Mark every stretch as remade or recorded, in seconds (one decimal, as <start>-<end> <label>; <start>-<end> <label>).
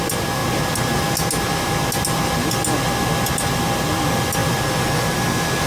0.0-5.7 recorded